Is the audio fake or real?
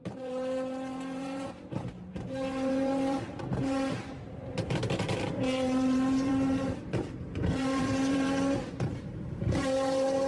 fake